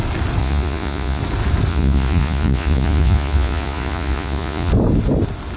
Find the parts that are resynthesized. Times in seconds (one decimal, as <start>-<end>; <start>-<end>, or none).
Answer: 0.4-1.2; 1.7-4.7